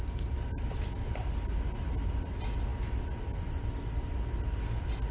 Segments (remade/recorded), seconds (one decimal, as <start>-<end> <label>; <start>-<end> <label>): 0.0-5.1 recorded